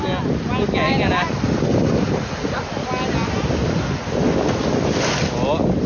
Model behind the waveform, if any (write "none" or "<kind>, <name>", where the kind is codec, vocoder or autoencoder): none